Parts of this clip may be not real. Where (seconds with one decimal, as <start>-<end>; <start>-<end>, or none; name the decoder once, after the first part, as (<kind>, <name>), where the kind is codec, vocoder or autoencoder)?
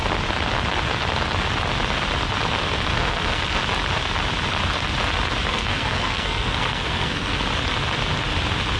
2.9-3.6 (codec, SNAC); 5.5-7.4